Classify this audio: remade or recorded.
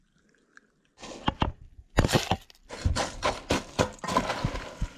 recorded